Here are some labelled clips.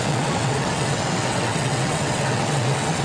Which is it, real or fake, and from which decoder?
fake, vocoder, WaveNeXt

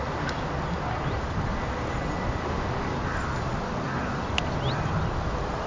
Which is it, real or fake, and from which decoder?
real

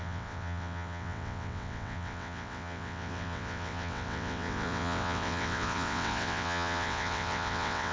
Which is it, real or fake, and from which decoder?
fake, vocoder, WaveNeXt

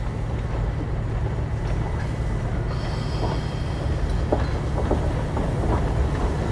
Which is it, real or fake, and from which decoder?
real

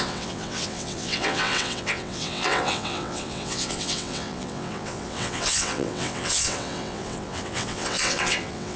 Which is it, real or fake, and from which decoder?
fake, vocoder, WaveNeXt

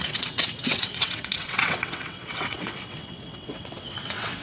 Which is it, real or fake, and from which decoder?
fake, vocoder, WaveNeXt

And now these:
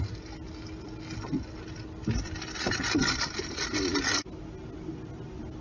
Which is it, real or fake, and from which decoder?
real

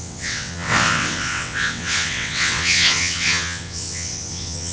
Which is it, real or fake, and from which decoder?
fake, vocoder, WaveNeXt